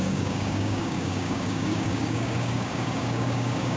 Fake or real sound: fake